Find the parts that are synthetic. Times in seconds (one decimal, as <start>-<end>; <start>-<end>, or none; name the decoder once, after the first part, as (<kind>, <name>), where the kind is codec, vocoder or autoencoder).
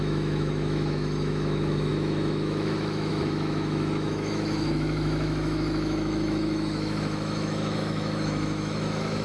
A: 0.0-9.2 (autoencoder, DAC-VAE)